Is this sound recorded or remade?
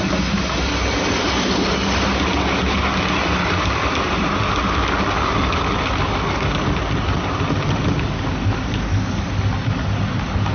recorded